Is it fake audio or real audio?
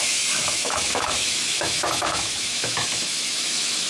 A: fake